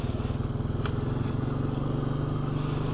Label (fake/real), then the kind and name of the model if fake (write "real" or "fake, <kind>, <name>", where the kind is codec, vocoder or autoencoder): real